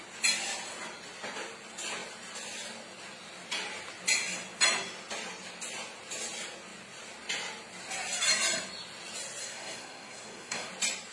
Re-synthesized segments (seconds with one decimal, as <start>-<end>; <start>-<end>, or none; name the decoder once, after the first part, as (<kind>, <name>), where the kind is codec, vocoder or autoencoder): 9.4-10.7 (codec, SNAC)